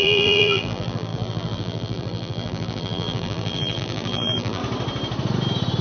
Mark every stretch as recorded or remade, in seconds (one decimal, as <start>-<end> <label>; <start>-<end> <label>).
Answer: 0.0-4.6 remade; 4.6-5.8 recorded